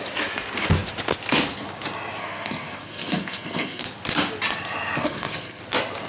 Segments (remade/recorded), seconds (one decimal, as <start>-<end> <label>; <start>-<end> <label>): 0.0-2.2 recorded; 2.2-3.8 remade; 3.8-5.0 recorded; 5.0-5.6 remade; 5.6-6.1 recorded